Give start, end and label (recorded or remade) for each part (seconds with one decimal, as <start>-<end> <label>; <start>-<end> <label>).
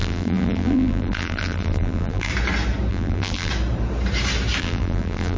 0.0-2.3 remade; 2.3-2.9 recorded; 2.9-3.5 remade; 3.5-4.6 recorded; 4.6-5.4 remade